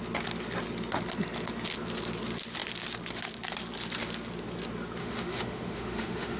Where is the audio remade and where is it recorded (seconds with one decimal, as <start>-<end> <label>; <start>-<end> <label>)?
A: 0.0-5.0 recorded; 5.0-6.4 remade